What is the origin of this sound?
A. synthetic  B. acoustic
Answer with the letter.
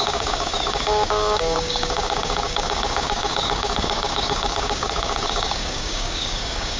A